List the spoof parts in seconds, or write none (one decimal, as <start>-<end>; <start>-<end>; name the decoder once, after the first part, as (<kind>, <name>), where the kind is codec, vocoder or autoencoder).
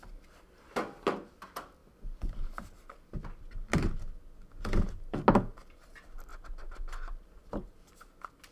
none